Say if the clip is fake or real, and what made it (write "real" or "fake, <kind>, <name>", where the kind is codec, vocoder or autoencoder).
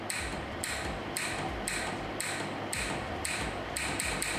real